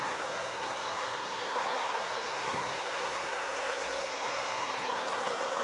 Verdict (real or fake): fake